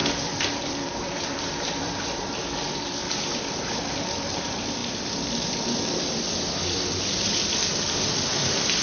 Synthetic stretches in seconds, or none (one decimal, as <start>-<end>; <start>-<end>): 0.0-8.8